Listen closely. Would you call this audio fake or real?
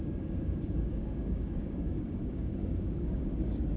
fake